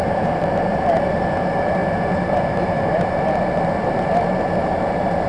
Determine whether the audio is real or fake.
fake